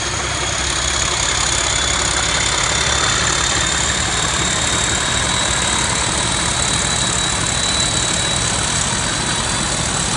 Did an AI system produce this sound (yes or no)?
no